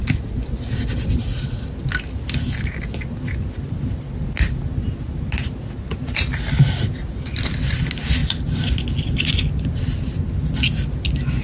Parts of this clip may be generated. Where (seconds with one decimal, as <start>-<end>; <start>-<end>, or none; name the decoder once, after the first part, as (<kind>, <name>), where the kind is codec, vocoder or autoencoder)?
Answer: none